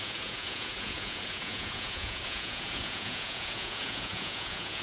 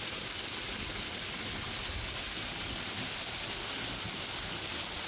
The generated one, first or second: first